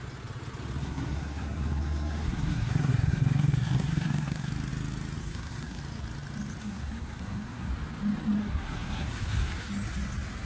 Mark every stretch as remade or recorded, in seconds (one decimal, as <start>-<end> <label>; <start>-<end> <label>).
0.0-0.8 recorded; 0.8-4.5 remade; 4.5-5.2 recorded; 5.2-5.8 remade; 5.8-6.6 recorded; 6.6-7.7 remade; 7.7-8.4 recorded; 8.4-9.7 remade; 9.7-10.5 recorded